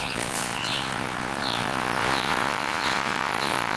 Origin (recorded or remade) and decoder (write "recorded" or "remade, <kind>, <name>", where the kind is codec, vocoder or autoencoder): remade, vocoder, Vocos